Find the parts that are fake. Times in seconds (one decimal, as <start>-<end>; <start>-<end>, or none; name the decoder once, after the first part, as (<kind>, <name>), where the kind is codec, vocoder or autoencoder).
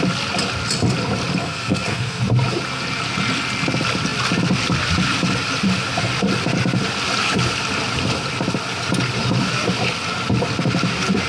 1.4-2.2 (codec, SNAC)